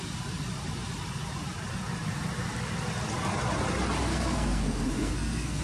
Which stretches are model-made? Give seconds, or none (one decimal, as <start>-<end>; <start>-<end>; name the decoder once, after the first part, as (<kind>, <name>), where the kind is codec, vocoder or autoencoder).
4.1-5.6 (codec, SNAC)